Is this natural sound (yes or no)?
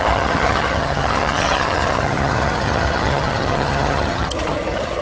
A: no